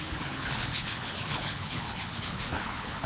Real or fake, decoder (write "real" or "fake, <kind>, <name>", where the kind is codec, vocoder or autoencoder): fake, codec, HILCodec